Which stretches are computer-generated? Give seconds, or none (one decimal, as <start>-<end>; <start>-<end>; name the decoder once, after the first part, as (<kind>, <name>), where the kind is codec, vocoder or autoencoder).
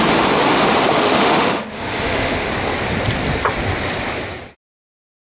1.0-2.5 (autoencoder, DAC-VAE)